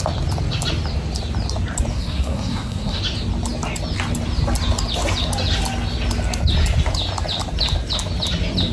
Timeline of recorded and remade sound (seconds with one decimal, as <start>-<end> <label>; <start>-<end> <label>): 0.0-1.9 recorded; 1.9-3.0 remade; 3.0-8.7 recorded